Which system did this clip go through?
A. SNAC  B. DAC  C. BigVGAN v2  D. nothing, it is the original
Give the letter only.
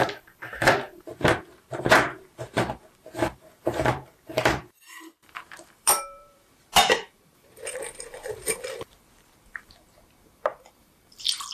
C